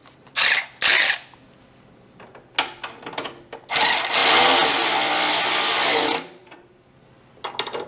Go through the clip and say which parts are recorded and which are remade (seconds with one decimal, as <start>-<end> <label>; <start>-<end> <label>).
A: 0.0-7.9 recorded